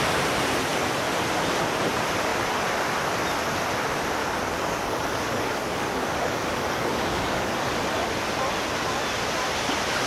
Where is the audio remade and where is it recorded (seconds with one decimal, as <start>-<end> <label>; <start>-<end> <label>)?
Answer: 0.0-4.2 recorded; 4.2-7.5 remade; 7.5-10.1 recorded